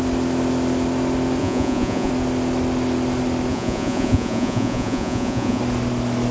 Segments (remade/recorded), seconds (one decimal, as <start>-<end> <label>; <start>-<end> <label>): 0.0-1.4 recorded; 1.4-2.1 remade; 2.1-3.5 recorded; 3.5-5.6 remade; 5.6-6.3 recorded